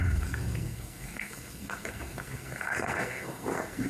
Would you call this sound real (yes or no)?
no